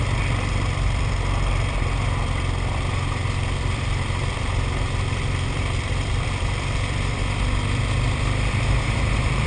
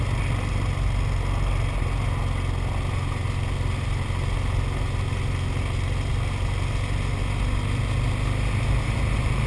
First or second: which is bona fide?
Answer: second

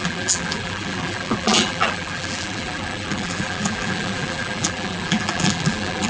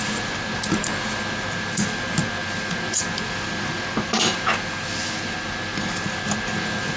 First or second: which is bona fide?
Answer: second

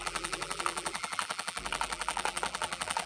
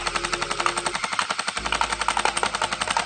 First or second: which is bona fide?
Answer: second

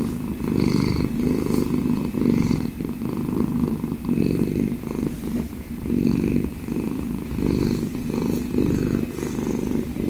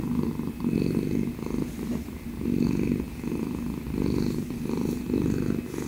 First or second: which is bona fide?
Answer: second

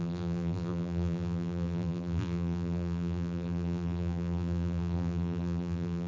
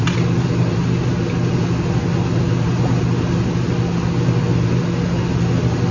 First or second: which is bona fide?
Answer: second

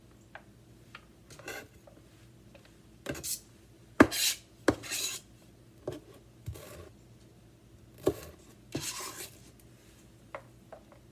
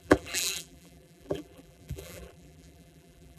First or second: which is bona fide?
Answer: first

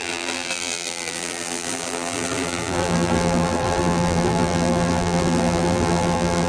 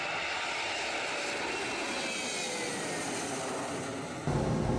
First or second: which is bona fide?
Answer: second